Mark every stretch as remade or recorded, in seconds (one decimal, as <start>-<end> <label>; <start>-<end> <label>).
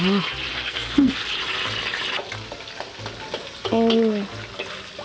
0.0-0.5 recorded; 0.5-1.1 remade; 1.1-5.0 recorded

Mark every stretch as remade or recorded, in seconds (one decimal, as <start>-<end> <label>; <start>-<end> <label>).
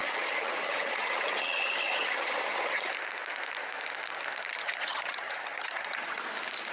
0.0-2.9 remade; 2.9-4.5 recorded; 4.5-6.2 remade; 6.2-6.7 recorded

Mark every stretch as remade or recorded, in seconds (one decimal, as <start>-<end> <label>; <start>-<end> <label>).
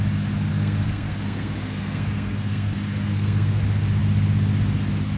0.0-0.5 recorded; 0.5-3.6 remade; 3.6-5.2 recorded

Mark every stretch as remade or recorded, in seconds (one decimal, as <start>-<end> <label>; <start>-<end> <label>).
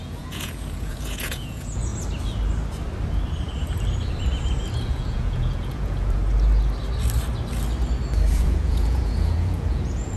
0.0-1.9 remade; 1.9-4.7 recorded; 4.7-6.2 remade; 6.2-8.3 recorded; 8.3-10.2 remade